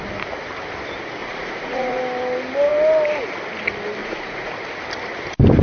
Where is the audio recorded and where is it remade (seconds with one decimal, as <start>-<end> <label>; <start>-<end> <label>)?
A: 0.0-1.2 recorded; 1.2-2.0 remade; 2.0-4.0 recorded; 4.0-4.5 remade; 4.5-5.6 recorded